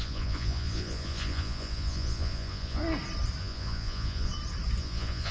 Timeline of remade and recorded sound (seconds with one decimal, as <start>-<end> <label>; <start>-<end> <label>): 0.0-2.8 remade; 2.8-3.4 recorded; 3.4-4.3 remade; 4.3-4.8 recorded; 4.8-5.3 remade